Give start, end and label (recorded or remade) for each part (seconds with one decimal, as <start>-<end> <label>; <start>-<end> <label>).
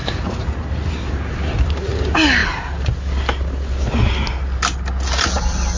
0.0-5.8 recorded